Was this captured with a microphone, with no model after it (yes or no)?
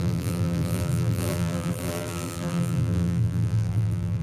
no